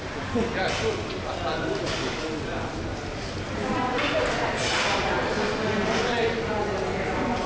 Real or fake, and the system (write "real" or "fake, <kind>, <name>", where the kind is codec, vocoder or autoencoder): real